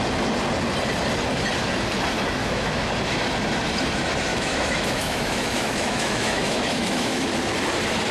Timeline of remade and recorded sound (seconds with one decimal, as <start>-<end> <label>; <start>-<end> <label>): 0.0-2.4 recorded; 2.4-2.9 remade; 2.9-4.3 recorded; 4.3-7.3 remade; 7.3-8.1 recorded